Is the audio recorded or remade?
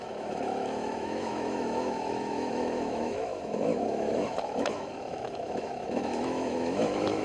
remade